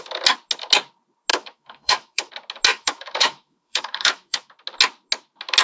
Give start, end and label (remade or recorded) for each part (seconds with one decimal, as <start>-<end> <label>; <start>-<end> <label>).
0.0-1.3 recorded; 1.3-2.3 remade; 2.3-2.7 recorded; 2.7-4.5 remade; 4.5-5.6 recorded